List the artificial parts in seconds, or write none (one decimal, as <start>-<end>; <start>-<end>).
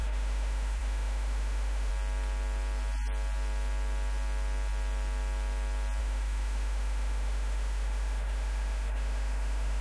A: 0.0-1.9; 6.0-9.8